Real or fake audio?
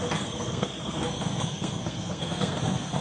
fake